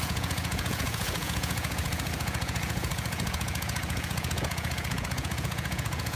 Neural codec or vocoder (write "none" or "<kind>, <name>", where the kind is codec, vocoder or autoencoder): vocoder, Vocos